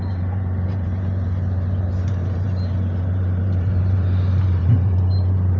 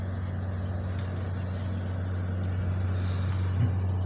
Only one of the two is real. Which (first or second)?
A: second